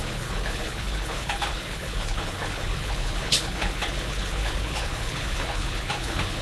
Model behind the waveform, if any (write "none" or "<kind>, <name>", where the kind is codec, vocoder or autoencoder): codec, HILCodec